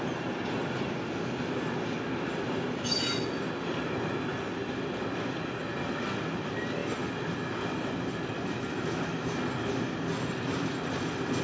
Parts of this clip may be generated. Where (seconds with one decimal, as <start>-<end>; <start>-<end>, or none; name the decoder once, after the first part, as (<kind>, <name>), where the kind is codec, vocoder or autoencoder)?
none